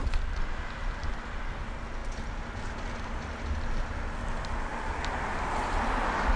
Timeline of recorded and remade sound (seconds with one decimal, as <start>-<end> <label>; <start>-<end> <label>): 0.0-6.4 recorded